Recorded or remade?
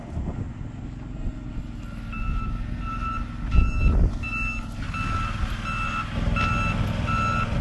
recorded